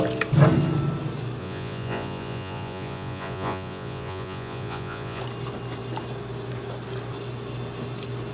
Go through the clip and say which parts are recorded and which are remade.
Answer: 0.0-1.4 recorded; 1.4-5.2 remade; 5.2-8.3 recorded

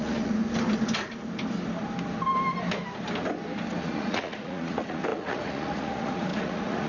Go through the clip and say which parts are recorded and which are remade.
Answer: 0.0-0.4 remade; 0.4-3.8 recorded; 3.8-6.9 remade

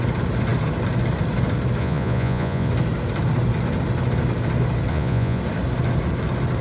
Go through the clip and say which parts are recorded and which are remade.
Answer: 0.0-1.8 recorded; 1.8-2.7 remade; 2.7-4.9 recorded; 4.9-5.4 remade; 5.4-6.6 recorded

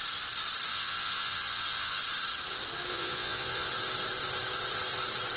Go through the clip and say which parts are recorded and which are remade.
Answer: 0.0-0.7 recorded; 0.7-2.0 remade; 2.0-2.9 recorded; 2.9-3.7 remade; 3.7-5.4 recorded

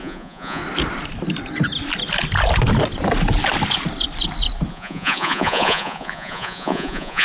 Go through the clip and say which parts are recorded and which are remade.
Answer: 0.0-0.6 remade; 0.6-4.7 recorded; 4.7-7.2 remade

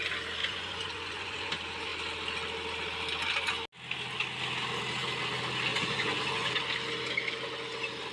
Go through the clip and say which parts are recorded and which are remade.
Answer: 0.0-0.4 recorded; 0.4-1.5 remade; 1.5-5.7 recorded; 5.7-6.5 remade; 6.5-8.1 recorded